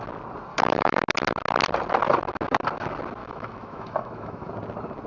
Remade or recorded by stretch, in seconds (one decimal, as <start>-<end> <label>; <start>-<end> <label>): 0.0-0.5 recorded; 0.5-1.0 remade; 1.0-3.2 recorded; 3.2-4.5 remade; 4.5-5.1 recorded